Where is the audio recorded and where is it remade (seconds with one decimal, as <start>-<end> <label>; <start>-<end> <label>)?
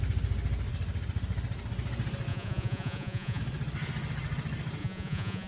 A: 0.0-2.3 recorded; 2.3-3.4 remade; 3.4-4.8 recorded; 4.8-5.5 remade